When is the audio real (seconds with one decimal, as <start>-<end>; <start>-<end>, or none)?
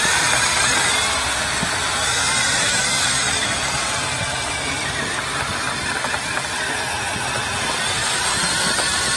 0.0-2.0; 2.8-9.2